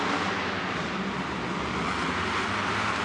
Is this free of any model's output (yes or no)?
yes